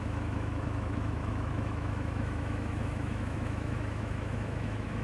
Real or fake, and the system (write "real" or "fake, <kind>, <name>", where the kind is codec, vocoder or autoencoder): fake, autoencoder, DAC-VAE